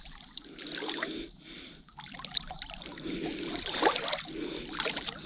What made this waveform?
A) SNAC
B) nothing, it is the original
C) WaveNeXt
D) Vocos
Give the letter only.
B